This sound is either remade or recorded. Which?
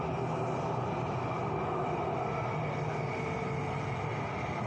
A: recorded